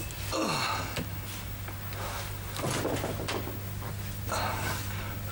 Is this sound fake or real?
real